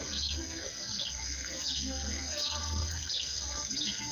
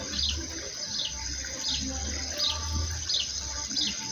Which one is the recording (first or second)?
second